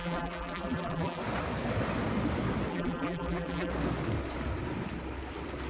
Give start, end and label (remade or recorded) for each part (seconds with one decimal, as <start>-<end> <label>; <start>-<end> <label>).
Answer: 0.0-1.2 remade; 1.2-2.7 recorded; 2.7-3.7 remade; 3.7-5.7 recorded